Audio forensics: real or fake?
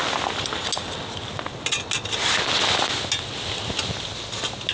real